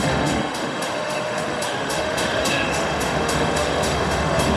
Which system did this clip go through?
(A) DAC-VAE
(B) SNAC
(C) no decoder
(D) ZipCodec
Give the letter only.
A